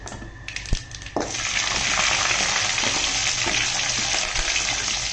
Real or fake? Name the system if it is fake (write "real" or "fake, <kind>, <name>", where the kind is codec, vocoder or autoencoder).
real